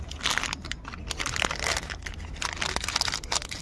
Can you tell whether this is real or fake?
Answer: real